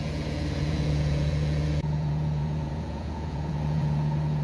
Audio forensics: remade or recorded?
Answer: remade